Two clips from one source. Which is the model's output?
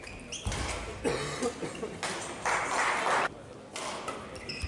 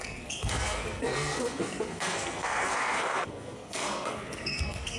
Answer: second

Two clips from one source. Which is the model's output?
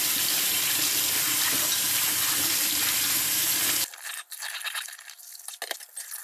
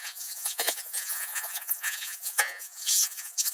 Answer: second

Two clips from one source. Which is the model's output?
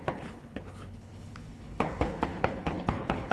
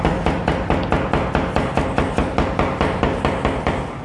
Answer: first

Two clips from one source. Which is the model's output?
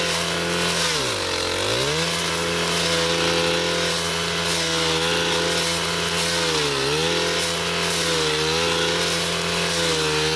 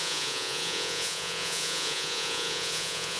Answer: second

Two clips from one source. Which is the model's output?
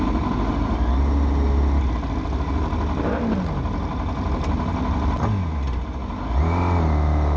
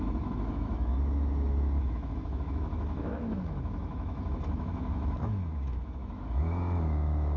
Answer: second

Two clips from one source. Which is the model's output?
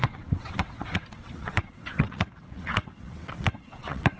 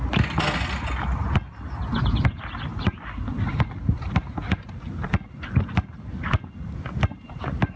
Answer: first